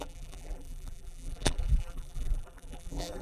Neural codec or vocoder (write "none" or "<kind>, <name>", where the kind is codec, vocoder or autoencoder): vocoder, BigVGAN v2